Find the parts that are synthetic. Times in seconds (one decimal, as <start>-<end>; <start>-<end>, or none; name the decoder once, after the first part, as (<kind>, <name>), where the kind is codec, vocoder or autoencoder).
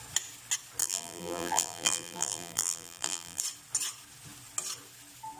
0.8-3.4 (vocoder, BigVGAN v2)